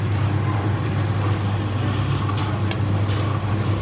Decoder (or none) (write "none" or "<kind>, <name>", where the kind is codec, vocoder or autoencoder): none